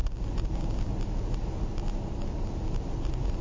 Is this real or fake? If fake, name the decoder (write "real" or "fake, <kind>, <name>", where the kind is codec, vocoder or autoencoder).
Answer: real